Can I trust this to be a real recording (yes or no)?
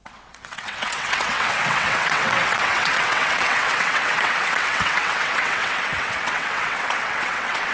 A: no